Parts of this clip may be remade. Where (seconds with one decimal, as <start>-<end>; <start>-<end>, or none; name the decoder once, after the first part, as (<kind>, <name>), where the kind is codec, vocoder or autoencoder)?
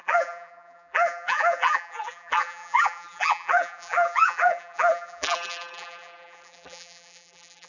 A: 0.0-7.7 (vocoder, BigVGAN v2)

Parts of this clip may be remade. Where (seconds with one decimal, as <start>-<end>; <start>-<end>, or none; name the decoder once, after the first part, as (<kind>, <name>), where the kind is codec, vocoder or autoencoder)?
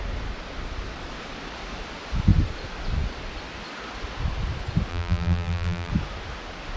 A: 4.9-5.9 (vocoder, BigVGAN v2)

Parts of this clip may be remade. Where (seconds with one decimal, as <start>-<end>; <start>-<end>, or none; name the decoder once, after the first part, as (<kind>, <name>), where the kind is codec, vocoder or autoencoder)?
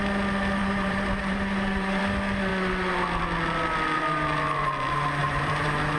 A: 0.6-2.0 (vocoder, BigVGAN v2); 5.2-6.0